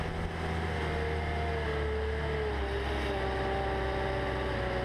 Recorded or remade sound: recorded